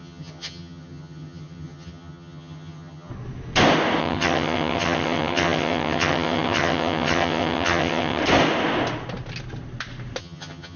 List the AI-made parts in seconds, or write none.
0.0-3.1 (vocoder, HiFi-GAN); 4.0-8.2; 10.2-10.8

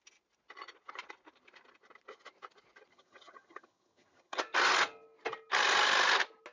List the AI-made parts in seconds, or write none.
2.9-4.4 (vocoder, HiFi-GAN)

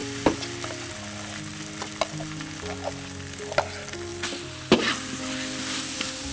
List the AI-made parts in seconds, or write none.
none

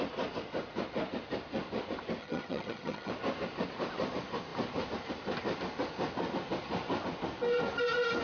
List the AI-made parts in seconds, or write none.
2.2-3.1 (vocoder, HiFi-GAN)

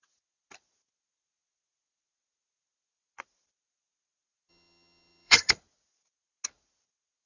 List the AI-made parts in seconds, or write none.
4.5-5.5 (vocoder, HiFi-GAN)

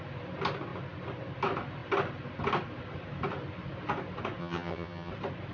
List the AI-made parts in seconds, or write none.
4.4-5.1 (vocoder, HiFi-GAN)